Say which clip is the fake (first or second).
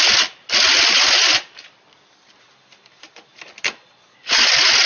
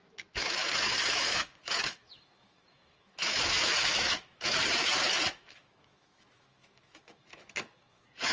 second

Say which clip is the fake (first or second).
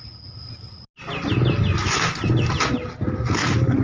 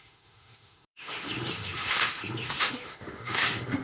second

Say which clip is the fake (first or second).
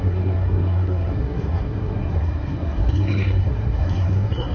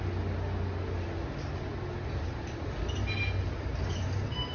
first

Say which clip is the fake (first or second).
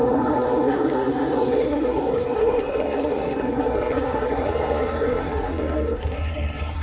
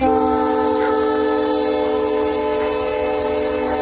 first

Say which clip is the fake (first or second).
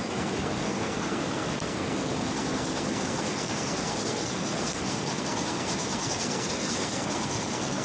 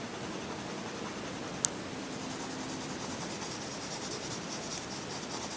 first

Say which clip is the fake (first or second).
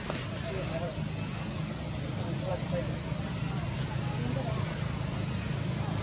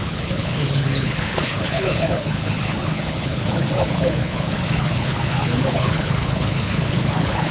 second